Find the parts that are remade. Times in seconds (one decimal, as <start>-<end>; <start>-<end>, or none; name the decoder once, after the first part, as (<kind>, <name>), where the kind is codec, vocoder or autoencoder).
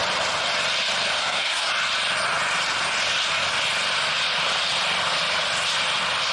1.2-1.7 (codec, SNAC)